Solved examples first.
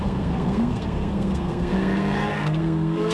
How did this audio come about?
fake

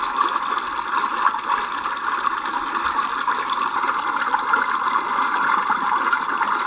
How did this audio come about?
real